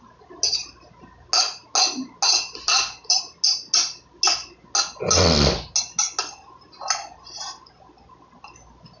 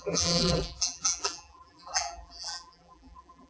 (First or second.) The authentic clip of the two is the first